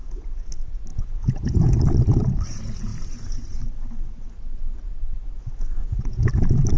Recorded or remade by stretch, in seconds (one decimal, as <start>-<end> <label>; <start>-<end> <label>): 0.0-0.5 remade; 0.5-0.9 recorded; 0.9-1.8 remade; 1.8-5.8 recorded; 5.8-6.3 remade; 6.3-6.8 recorded